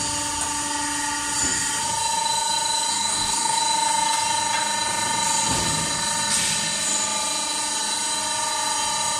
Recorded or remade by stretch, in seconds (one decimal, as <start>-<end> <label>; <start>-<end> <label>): 0.0-2.9 recorded; 2.9-3.6 remade; 3.6-9.2 recorded